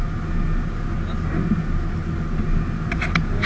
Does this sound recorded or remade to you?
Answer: recorded